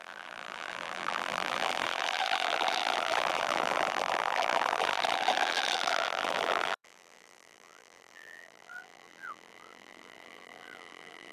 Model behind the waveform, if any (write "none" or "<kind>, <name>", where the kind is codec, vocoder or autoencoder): vocoder, BigVGAN v2